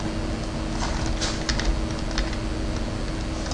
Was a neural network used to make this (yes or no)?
no